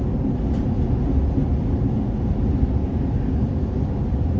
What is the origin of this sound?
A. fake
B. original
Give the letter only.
B